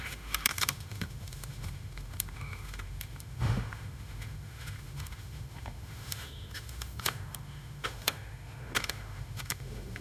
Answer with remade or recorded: remade